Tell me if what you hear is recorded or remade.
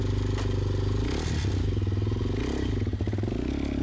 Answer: recorded